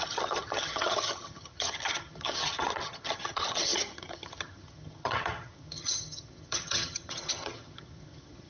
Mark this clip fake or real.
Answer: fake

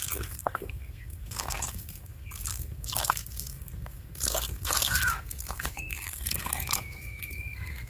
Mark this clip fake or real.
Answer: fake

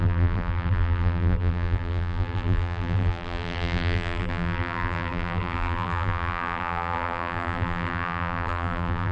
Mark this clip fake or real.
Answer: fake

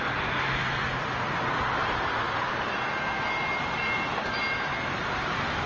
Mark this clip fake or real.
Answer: real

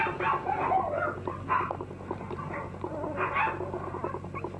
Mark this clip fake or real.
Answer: real